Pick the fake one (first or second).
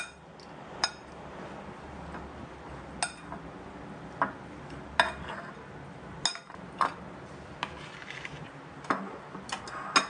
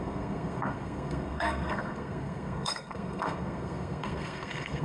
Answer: second